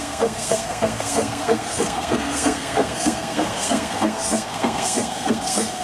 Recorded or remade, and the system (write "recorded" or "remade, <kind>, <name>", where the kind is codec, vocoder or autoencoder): remade, codec, SNAC